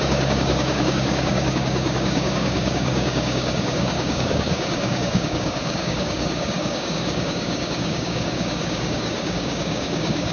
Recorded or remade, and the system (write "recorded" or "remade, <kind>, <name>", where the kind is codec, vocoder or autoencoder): remade, codec, DAC